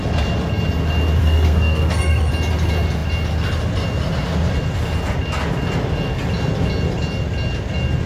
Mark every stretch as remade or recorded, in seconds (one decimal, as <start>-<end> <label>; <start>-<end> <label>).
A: 0.0-1.2 recorded; 1.2-2.3 remade; 2.3-8.1 recorded